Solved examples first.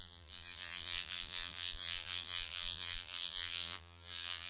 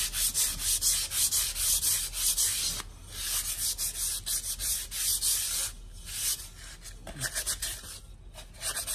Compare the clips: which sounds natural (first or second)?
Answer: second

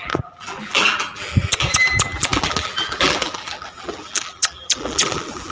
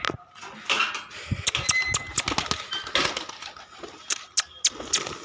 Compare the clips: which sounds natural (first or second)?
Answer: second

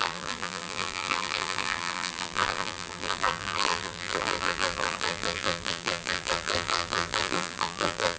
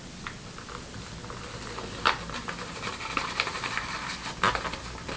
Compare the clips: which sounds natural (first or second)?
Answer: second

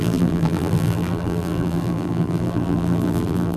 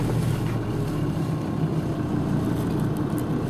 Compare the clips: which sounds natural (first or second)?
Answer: second